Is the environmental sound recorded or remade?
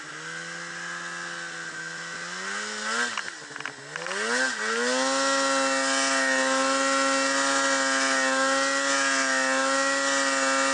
recorded